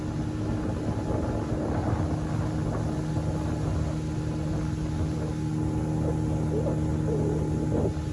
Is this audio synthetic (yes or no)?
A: no